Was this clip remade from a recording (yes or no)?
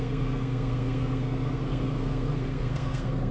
yes